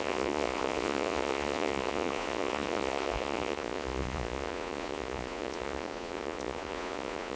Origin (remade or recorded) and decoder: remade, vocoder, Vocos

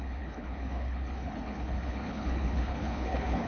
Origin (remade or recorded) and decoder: remade, codec, HILCodec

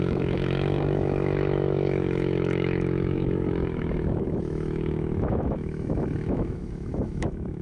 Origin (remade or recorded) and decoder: remade, autoencoder, DAC-VAE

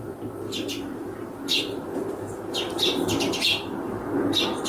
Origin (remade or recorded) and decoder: recorded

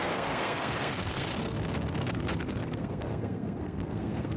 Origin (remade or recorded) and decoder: remade, codec, SNAC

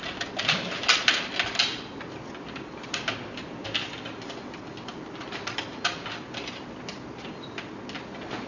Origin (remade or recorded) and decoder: recorded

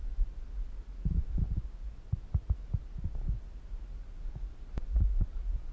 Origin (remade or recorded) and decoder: recorded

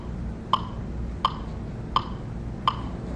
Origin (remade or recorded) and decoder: recorded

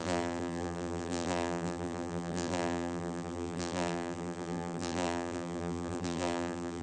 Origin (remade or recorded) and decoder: remade, vocoder, BigVGAN v2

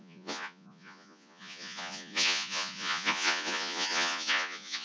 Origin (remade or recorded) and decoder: remade, vocoder, Vocos